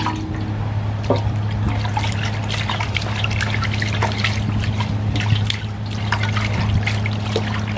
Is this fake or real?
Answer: real